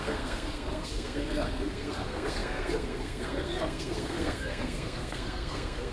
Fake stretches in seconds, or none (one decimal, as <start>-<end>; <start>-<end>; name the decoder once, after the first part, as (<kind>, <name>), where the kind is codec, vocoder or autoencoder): 0.0-5.9 (codec, SNAC)